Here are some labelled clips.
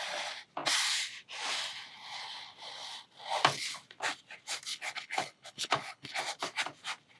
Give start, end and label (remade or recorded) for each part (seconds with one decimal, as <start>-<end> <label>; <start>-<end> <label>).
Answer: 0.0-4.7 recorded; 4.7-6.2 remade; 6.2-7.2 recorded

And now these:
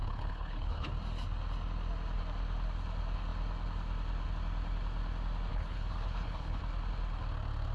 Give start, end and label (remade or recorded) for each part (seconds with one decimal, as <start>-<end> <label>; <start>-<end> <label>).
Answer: 0.0-0.9 remade; 0.9-5.5 recorded; 5.5-6.6 remade; 6.6-7.7 recorded

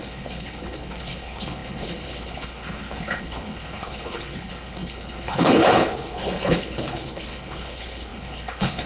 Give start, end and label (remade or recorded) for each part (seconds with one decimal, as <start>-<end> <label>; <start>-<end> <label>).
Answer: 0.0-8.9 remade

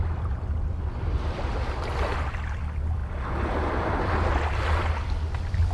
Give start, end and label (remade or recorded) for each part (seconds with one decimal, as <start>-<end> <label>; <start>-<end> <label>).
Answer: 0.0-5.7 recorded

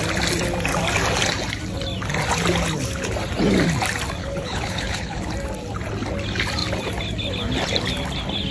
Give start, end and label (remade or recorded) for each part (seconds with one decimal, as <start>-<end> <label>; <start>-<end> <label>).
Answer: 0.0-4.2 recorded; 4.2-5.3 remade; 5.3-8.5 recorded